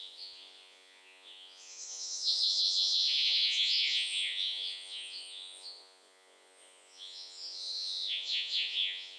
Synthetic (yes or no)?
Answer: yes